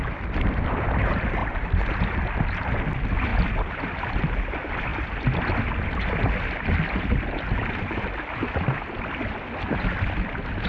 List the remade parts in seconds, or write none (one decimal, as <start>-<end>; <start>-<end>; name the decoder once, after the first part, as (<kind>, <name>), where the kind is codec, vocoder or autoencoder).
1.4-2.0 (vocoder, BigVGAN v2)